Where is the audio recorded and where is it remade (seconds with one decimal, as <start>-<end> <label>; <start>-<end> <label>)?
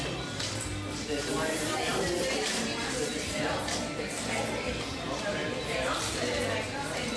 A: 0.0-7.2 recorded